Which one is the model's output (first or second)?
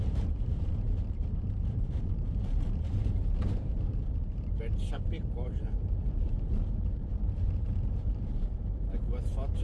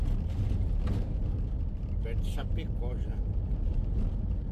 first